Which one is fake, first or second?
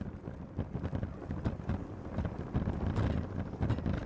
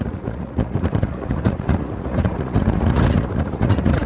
second